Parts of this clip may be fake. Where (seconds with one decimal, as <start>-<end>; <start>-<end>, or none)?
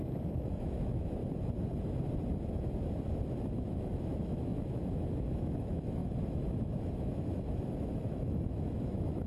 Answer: 0.0-1.2; 3.4-9.3